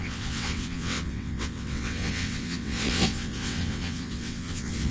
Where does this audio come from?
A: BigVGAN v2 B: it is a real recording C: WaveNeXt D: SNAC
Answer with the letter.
C